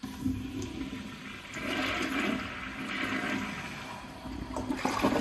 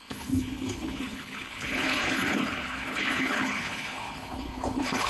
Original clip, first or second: first